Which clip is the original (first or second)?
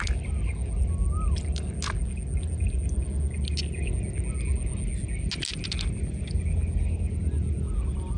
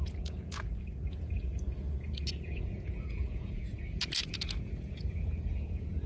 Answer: first